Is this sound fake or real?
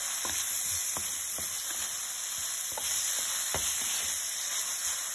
real